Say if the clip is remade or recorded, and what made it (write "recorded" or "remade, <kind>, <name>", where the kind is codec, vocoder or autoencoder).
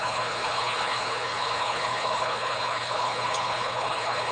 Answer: remade, codec, HILCodec